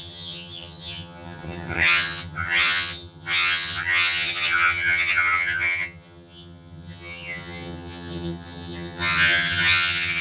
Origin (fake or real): fake